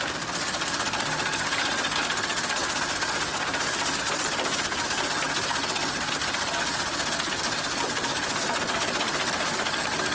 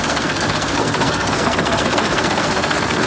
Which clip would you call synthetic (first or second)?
second